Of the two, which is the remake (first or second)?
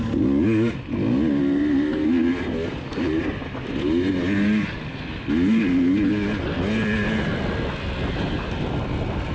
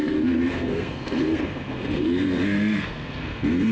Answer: second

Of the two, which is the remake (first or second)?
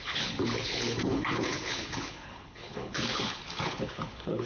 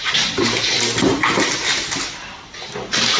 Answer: first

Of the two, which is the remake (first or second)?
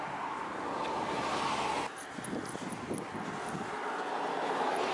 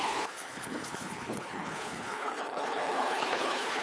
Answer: second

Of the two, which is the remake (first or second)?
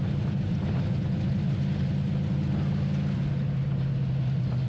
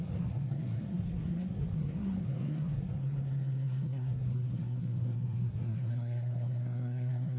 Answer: second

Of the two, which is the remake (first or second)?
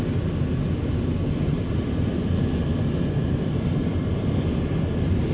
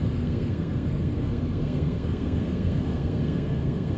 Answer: second